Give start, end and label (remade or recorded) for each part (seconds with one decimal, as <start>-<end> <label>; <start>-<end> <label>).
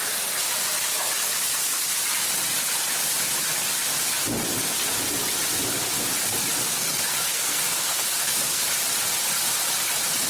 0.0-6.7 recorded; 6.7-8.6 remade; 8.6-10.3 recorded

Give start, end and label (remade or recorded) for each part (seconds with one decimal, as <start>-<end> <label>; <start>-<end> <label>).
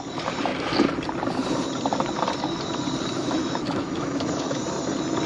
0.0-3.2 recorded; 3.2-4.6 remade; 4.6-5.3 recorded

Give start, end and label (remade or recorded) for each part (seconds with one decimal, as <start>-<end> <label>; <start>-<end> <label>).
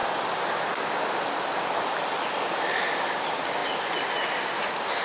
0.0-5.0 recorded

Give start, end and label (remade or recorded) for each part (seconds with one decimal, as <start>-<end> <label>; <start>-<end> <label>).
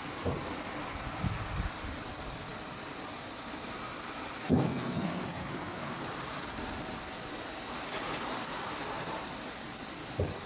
0.0-4.4 recorded; 4.4-5.9 remade; 5.9-10.5 recorded